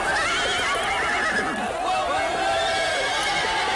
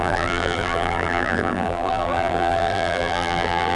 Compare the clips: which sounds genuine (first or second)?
first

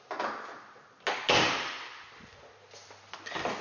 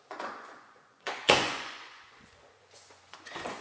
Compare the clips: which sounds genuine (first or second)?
first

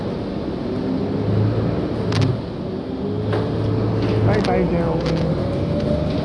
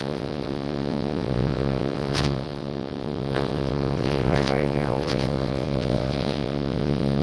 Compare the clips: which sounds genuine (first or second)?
first